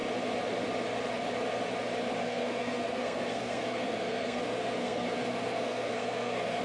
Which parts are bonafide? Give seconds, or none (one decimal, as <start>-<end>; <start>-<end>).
0.0-2.2